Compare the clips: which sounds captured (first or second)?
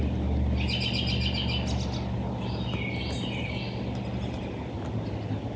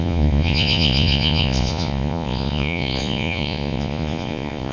first